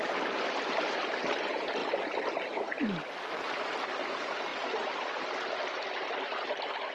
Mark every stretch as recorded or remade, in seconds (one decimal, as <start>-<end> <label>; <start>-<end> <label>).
0.0-6.9 recorded